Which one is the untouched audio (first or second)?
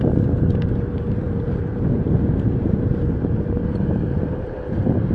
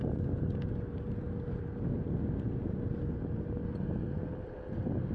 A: second